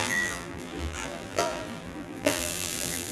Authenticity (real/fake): fake